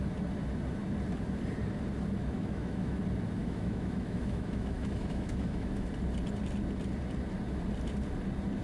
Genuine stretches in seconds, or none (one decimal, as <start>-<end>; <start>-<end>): 0.0-2.2; 3.0-3.4; 5.9-8.6